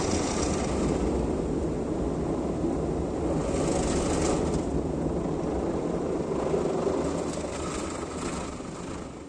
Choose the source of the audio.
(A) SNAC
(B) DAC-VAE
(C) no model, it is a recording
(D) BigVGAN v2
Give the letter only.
C